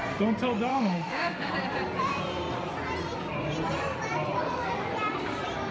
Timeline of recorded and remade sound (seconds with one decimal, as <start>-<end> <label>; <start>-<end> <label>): 0.0-0.7 recorded; 0.7-1.5 remade; 1.5-5.7 recorded